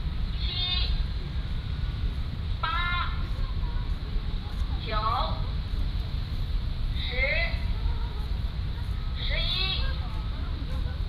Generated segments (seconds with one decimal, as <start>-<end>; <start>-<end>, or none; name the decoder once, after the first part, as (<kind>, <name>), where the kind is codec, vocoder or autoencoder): 0.0-10.0 (vocoder, BigVGAN v2)